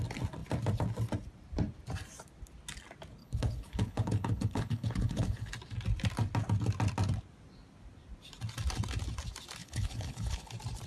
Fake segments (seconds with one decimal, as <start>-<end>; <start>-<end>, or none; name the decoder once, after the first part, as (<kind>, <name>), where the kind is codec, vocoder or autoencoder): 3.2-5.5 (codec, HILCodec); 9.6-10.5